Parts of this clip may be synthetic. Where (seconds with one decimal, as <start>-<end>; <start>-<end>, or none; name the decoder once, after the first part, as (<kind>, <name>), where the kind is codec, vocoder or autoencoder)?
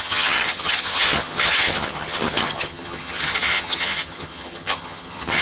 0.0-5.4 (vocoder, HiFi-GAN)